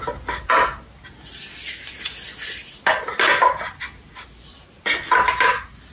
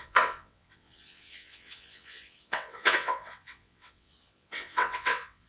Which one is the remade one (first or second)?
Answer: second